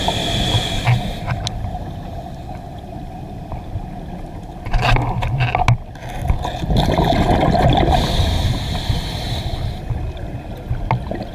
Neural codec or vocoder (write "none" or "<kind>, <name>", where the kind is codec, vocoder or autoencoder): none